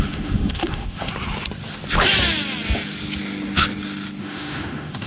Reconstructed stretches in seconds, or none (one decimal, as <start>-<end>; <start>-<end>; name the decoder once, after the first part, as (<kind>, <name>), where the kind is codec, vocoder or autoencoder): 0.0-1.1 (autoencoder, DAC-VAE); 4.2-5.1